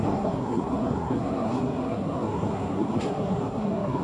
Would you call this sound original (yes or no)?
no